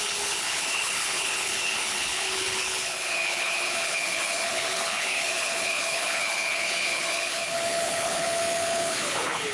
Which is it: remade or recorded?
remade